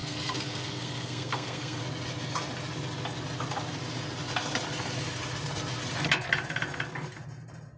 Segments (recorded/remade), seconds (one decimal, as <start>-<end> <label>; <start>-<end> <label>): 0.0-1.8 remade; 1.8-7.8 recorded